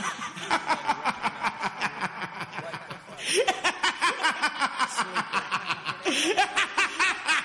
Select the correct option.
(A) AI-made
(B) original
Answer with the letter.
B